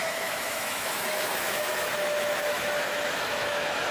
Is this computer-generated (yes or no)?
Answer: yes